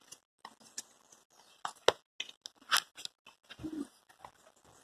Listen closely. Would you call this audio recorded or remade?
recorded